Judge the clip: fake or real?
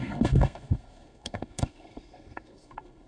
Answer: fake